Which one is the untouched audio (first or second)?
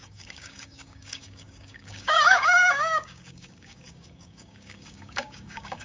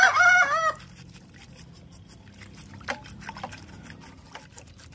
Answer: second